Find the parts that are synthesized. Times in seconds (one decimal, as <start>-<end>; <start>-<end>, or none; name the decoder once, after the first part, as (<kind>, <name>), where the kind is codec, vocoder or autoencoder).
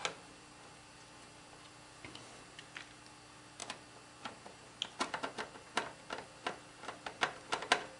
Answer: none